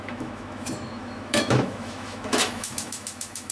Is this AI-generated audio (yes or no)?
yes